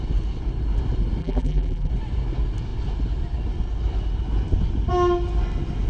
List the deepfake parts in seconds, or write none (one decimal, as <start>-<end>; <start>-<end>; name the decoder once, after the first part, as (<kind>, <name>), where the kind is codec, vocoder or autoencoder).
1.2-1.9 (vocoder, BigVGAN v2)